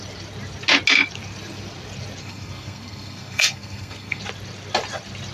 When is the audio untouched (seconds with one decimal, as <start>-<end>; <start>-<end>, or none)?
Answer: 0.0-2.2; 4.2-5.3